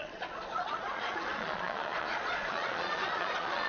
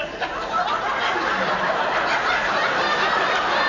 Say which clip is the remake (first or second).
first